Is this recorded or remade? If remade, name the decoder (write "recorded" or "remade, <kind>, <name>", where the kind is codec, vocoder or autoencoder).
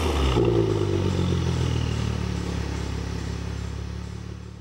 recorded